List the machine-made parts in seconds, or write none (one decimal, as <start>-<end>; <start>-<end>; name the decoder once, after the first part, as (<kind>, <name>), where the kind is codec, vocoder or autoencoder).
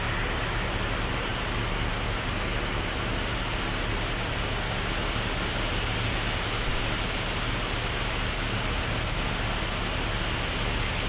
none